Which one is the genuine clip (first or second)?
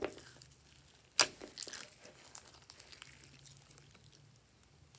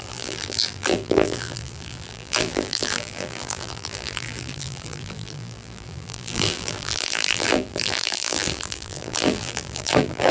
first